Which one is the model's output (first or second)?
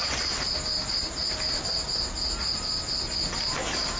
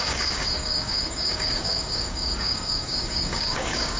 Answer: second